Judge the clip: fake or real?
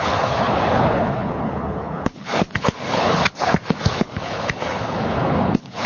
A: fake